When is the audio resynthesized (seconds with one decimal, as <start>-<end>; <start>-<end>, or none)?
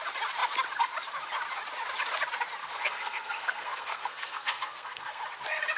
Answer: 2.6-5.2